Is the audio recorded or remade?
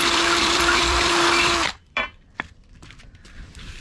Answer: remade